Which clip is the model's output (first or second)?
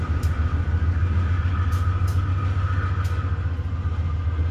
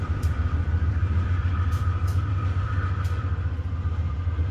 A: second